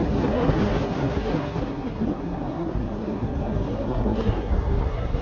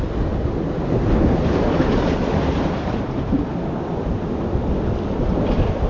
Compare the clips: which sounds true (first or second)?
second